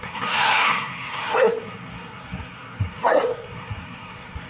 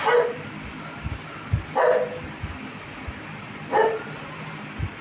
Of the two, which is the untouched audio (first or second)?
second